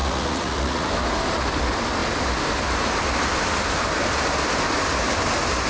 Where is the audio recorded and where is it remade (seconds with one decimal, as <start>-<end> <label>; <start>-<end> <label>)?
0.0-0.9 remade; 0.9-5.7 recorded